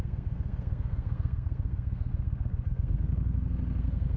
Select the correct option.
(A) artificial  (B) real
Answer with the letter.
A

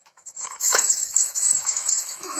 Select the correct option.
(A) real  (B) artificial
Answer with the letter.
B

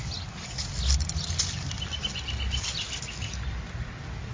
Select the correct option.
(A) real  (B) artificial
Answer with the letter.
A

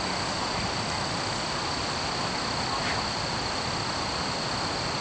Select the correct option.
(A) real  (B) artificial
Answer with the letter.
A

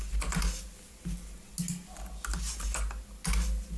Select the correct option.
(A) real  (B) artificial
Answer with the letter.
A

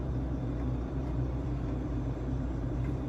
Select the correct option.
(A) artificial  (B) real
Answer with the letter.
A